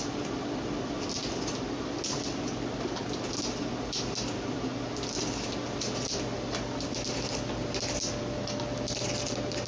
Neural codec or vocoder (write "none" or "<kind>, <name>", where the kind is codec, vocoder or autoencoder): none